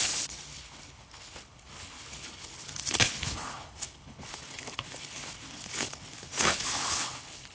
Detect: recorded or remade remade